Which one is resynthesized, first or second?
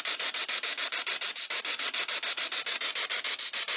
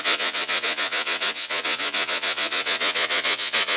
second